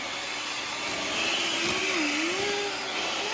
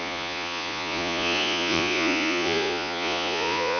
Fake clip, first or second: second